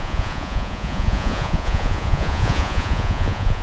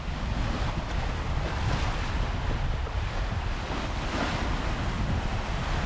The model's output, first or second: first